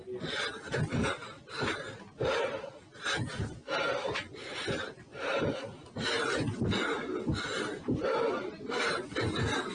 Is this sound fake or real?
real